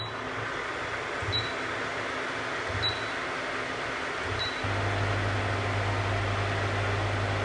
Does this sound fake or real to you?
real